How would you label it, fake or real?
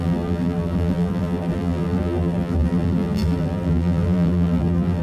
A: fake